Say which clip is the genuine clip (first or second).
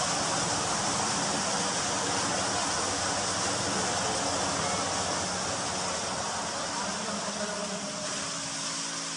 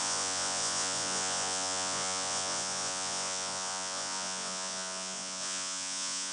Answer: first